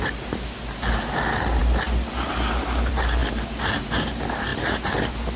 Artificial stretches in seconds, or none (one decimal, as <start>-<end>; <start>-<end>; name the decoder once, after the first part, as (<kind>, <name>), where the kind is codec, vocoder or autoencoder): none